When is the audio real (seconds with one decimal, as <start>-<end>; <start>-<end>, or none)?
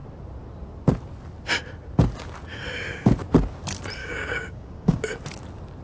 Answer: 0.0-4.0; 5.0-5.8